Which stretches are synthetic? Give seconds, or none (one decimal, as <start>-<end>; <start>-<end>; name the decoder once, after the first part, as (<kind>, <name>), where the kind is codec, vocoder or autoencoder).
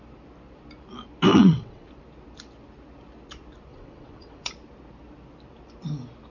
1.3-1.9 (vocoder, WaveNeXt); 3.7-4.5